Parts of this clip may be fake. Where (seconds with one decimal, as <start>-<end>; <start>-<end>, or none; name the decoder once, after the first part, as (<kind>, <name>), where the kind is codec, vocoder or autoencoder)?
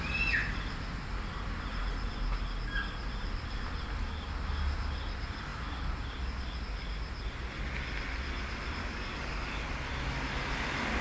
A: 8.8-9.6 (codec, DAC)